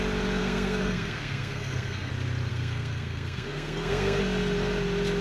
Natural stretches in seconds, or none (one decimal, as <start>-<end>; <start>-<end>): 0.0-0.4; 2.1-2.5; 4.2-5.2